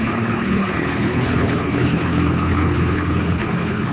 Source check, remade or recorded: remade